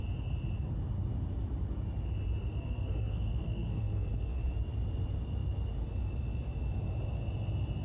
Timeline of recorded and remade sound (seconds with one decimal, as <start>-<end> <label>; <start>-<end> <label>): 0.0-2.4 recorded; 2.4-4.4 remade; 4.4-7.8 recorded